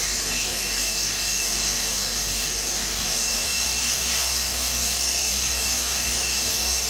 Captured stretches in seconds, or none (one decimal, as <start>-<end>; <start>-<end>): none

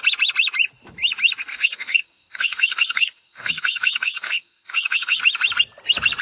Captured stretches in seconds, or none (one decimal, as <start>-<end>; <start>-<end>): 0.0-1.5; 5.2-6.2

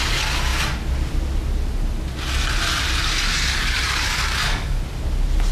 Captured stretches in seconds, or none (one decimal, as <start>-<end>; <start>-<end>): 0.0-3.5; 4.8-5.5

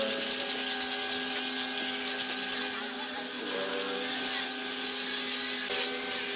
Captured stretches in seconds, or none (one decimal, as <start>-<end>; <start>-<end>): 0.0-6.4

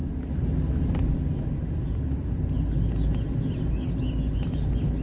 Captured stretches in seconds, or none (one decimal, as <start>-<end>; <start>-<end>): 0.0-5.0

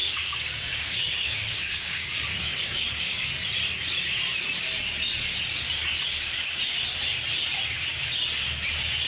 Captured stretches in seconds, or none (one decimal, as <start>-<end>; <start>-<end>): 3.3-9.1

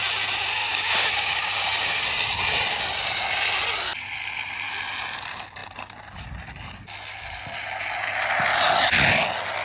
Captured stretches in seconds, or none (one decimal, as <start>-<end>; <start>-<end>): 0.0-0.6; 2.0-9.6

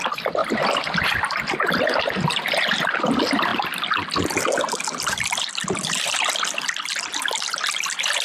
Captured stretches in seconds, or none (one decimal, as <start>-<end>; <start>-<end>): 0.0-8.2